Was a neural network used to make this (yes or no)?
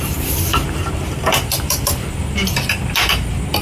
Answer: no